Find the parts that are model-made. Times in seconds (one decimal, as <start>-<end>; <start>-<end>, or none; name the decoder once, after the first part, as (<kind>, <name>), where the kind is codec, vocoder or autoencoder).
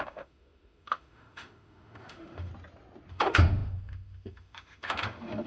0.0-2.5 (autoencoder, DAC-VAE); 3.1-5.5